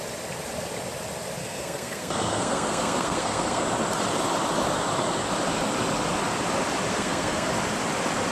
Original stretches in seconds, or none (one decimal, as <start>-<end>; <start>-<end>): 0.0-1.4; 3.6-6.9; 7.5-8.3